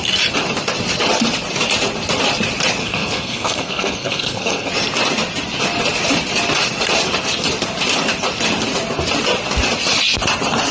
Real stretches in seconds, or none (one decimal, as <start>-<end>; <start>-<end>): 0.0-2.8; 4.7-10.7